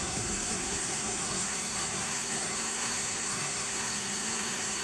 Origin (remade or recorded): remade